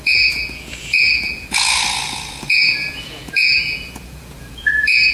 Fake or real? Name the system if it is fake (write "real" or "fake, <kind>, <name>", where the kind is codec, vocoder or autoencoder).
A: fake, vocoder, Vocos